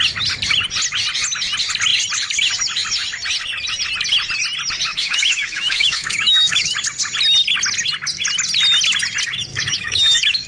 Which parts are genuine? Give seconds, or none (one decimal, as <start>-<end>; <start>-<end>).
0.0-4.9; 6.7-9.5